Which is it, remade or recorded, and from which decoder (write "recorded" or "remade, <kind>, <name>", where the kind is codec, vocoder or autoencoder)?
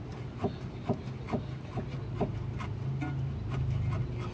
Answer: recorded